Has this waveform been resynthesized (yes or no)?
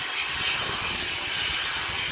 no